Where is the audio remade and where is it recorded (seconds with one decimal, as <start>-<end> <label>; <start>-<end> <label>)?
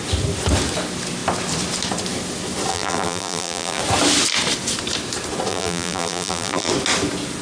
0.0-2.7 recorded; 2.7-3.8 remade; 3.8-5.5 recorded; 5.5-6.7 remade; 6.7-7.4 recorded